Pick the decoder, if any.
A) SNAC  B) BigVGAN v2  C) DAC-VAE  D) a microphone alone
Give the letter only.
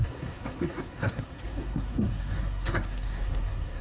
A